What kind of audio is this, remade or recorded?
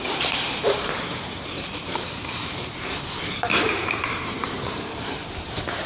remade